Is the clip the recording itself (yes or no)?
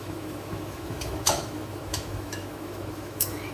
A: no